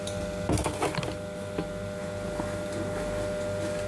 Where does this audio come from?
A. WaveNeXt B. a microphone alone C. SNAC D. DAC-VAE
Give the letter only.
B